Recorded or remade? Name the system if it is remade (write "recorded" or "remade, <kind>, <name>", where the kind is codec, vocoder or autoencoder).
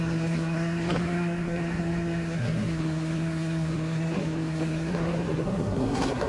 remade, codec, SNAC